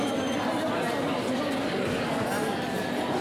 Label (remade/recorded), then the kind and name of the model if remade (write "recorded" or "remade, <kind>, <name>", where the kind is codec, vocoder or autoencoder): recorded